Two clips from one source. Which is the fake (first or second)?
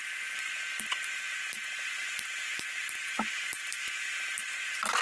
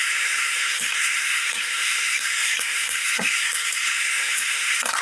second